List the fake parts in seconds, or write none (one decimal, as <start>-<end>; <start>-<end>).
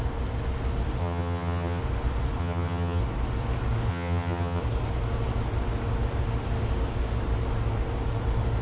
1.0-1.8; 2.4-3.0; 3.9-4.6